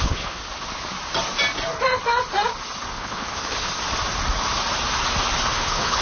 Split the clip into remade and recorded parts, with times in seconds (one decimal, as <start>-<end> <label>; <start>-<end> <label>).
0.0-0.4 remade; 0.4-2.9 recorded; 2.9-3.7 remade; 3.7-5.5 recorded; 5.5-6.0 remade